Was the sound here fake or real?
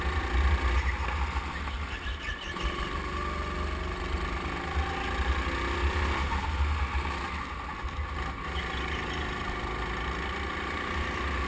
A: real